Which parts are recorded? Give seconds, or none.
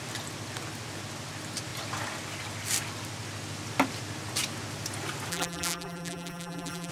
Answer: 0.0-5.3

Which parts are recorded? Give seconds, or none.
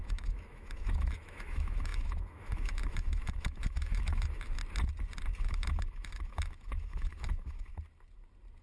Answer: 4.6-5.4; 7.7-8.6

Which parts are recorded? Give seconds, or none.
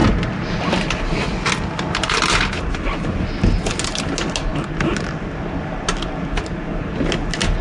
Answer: 0.0-7.6